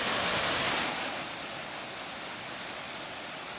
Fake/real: real